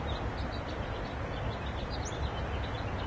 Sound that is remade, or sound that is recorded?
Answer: recorded